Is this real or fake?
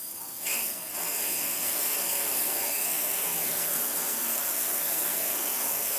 fake